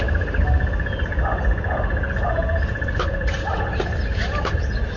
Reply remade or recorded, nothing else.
recorded